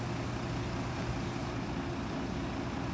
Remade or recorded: recorded